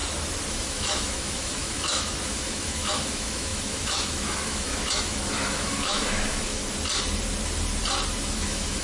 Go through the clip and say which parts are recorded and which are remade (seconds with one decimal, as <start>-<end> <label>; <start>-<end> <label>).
0.0-0.5 recorded; 0.5-6.6 remade; 6.6-8.2 recorded; 8.2-8.8 remade